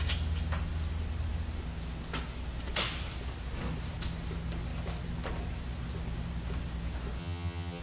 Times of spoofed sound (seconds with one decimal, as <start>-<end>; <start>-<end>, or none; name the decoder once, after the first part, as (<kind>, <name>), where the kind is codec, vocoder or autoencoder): 7.2-7.8 (vocoder, HiFi-GAN)